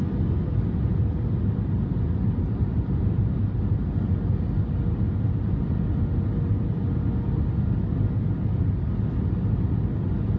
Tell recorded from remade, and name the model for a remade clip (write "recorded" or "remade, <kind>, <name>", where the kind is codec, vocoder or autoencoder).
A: recorded